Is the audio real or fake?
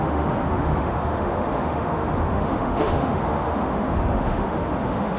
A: fake